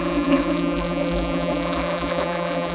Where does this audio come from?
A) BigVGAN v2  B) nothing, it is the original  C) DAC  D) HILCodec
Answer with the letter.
A